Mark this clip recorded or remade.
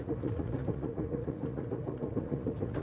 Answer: remade